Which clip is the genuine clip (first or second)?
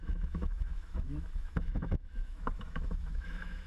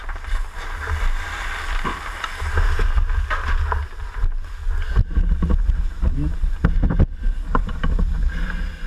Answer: second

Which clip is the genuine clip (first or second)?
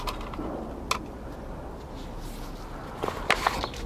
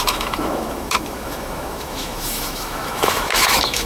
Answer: first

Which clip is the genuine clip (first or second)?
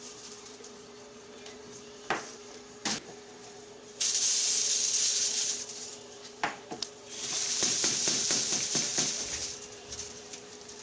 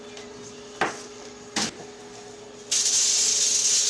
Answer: second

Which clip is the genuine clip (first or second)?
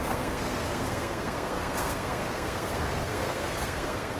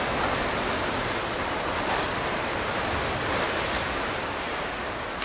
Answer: second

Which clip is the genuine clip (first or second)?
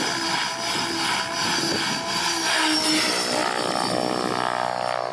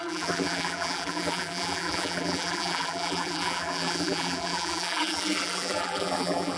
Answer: first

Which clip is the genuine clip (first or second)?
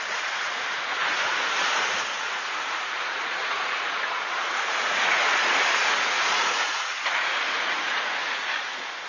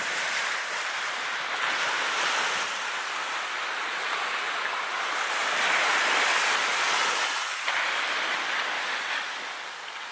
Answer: second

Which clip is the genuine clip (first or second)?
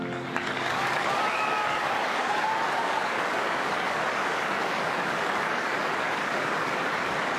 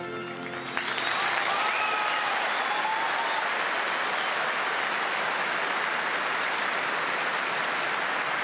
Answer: second